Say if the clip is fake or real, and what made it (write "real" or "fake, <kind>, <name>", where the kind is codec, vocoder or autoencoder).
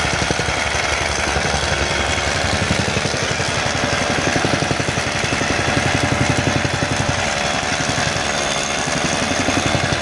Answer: real